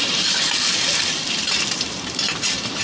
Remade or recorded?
remade